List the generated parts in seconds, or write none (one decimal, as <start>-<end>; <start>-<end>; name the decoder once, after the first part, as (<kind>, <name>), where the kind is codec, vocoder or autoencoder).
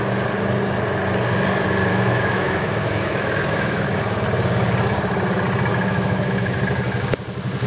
1.9-4.0 (autoencoder, DAC-VAE); 5.7-6.6